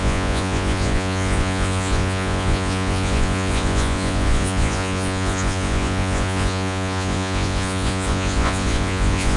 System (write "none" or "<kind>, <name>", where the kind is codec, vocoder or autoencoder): vocoder, Vocos